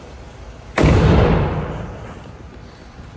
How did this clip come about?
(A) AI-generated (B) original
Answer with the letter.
A